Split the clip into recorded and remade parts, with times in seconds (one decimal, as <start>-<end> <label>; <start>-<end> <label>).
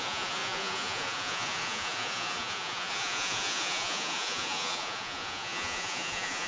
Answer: 0.0-6.5 remade